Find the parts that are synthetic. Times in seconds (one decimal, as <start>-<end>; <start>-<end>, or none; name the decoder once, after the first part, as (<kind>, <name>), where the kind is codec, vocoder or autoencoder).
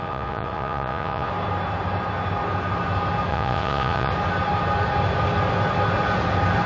0.0-1.3 (vocoder, Vocos); 3.3-4.1